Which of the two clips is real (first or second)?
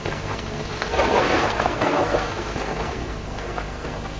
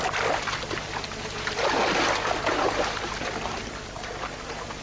second